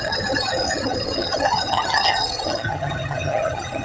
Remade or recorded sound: remade